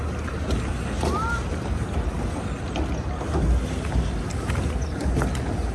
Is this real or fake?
real